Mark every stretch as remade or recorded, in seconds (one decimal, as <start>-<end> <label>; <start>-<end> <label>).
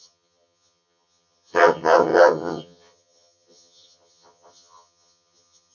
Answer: 0.0-5.7 remade